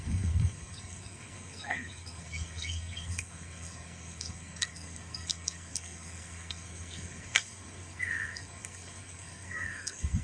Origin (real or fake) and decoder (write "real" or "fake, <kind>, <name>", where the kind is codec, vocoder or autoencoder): fake, codec, SNAC